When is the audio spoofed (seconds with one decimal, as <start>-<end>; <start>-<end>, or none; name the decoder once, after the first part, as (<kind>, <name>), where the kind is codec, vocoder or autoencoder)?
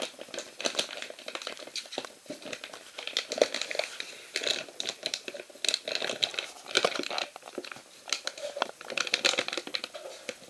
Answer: 4.6-5.5 (vocoder, BigVGAN v2); 6.3-8.8